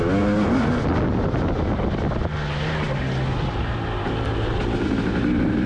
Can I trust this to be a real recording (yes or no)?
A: yes